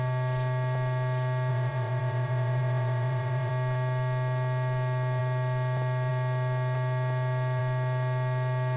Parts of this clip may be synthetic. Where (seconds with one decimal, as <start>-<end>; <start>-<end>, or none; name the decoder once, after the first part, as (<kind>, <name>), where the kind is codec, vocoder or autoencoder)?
1.5-3.5 (vocoder, WaveNeXt)